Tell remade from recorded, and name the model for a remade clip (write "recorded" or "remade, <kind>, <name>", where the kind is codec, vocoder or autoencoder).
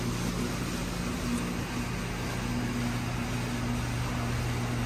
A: recorded